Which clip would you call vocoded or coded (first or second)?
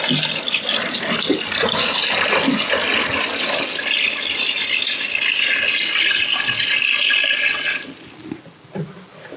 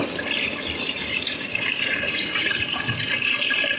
second